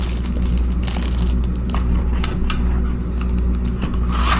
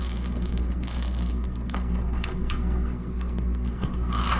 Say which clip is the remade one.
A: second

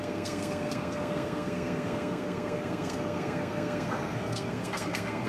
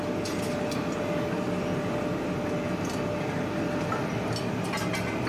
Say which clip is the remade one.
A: first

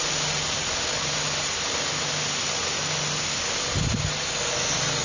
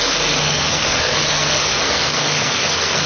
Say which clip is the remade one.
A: second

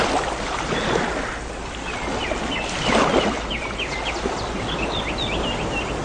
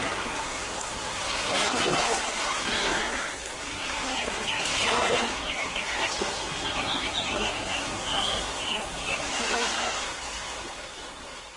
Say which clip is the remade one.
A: second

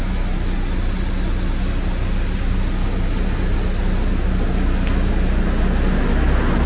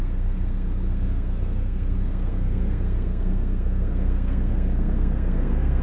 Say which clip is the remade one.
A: second